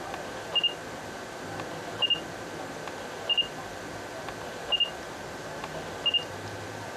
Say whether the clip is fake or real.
real